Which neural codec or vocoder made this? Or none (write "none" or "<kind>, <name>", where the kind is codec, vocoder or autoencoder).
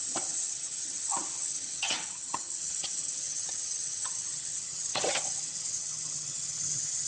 vocoder, HiFi-GAN